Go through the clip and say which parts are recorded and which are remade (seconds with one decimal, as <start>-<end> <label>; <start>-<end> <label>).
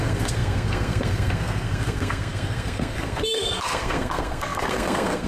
0.0-5.3 remade